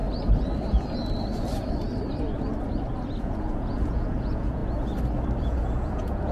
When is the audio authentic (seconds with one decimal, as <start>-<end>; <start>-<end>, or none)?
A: 0.0-3.2; 4.6-5.4